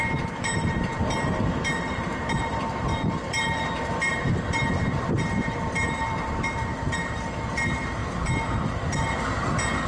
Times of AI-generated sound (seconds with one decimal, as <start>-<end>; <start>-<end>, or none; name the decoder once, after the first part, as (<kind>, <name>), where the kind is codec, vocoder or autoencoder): 0.0-8.0 (vocoder, BigVGAN v2)